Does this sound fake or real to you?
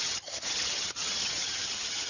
fake